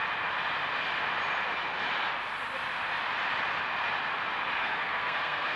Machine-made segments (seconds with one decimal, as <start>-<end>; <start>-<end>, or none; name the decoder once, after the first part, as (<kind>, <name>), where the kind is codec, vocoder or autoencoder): 4.6-5.6 (codec, SNAC)